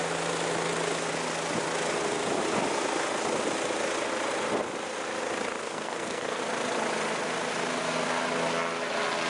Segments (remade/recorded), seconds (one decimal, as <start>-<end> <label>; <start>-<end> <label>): 0.0-5.6 recorded; 5.6-6.4 remade; 6.4-9.3 recorded